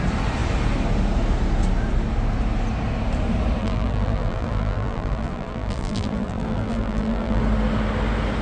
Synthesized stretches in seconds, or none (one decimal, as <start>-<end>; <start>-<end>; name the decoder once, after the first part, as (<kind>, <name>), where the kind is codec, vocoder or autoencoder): 3.6-7.4 (vocoder, BigVGAN v2)